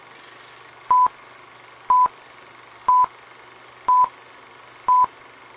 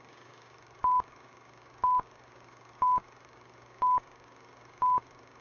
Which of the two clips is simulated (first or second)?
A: second